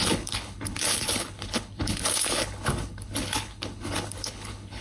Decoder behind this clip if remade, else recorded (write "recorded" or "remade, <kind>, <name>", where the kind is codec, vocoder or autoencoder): remade, codec, HILCodec